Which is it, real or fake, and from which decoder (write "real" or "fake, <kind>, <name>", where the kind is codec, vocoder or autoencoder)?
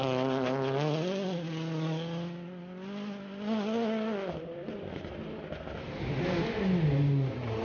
real